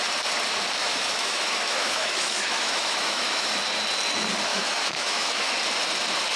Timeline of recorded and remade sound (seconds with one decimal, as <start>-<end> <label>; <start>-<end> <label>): 0.0-0.8 recorded; 0.8-3.5 remade; 3.5-4.5 recorded; 4.5-5.5 remade; 5.5-6.4 recorded